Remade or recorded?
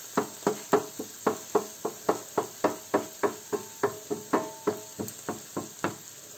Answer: recorded